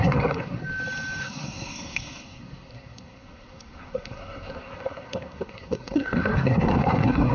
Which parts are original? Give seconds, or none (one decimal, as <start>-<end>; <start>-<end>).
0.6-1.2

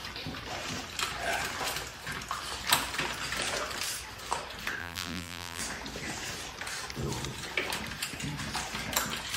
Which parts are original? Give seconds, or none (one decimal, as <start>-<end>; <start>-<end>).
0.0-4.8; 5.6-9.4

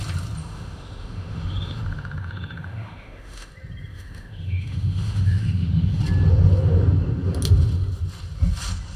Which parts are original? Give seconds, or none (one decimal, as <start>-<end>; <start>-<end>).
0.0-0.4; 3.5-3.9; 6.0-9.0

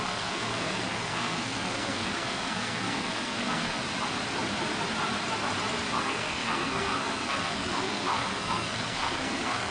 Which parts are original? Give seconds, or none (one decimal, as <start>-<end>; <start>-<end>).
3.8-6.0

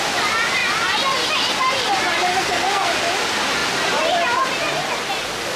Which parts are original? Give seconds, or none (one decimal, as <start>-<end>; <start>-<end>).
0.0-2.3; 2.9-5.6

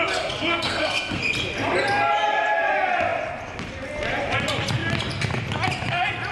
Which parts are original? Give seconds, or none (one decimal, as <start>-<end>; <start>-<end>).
0.0-0.5; 1.2-6.3

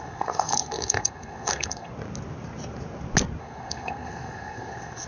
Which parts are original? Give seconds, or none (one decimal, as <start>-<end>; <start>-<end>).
1.9-3.4